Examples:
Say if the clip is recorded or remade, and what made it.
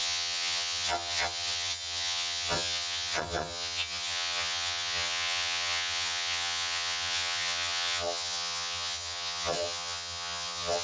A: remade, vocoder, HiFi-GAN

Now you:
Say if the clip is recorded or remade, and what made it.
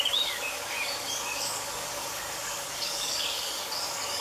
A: remade, codec, DAC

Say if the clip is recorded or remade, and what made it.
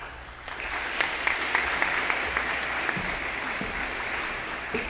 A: remade, vocoder, BigVGAN v2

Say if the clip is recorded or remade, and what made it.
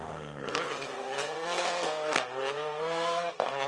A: remade, codec, SNAC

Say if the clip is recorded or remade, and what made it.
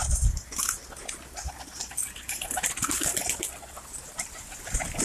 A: recorded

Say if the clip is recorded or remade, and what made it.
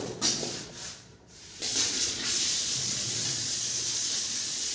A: remade, vocoder, Vocos